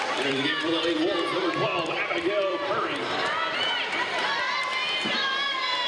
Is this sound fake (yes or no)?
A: yes